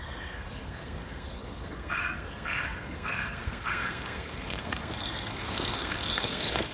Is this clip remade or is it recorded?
remade